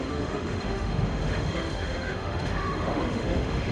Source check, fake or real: fake